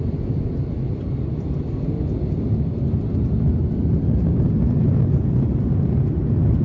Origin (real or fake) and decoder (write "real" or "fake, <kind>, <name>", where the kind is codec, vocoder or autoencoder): real